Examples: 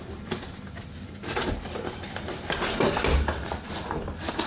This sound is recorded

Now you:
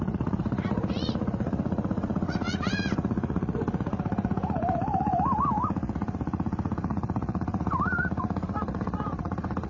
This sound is remade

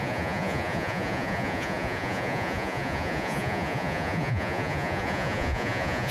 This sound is remade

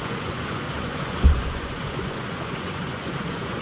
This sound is remade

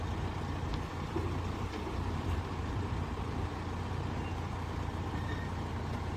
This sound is recorded